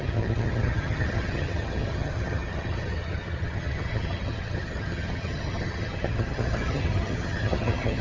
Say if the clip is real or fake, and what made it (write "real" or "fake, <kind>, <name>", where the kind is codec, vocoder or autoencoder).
fake, vocoder, HiFi-GAN